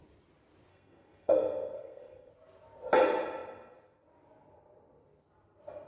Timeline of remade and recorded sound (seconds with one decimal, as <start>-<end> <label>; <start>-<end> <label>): 0.0-0.7 recorded; 0.7-2.3 remade; 2.3-5.9 recorded